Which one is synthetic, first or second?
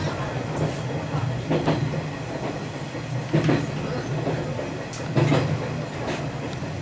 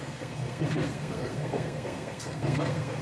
second